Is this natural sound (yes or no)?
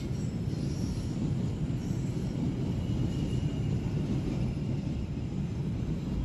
yes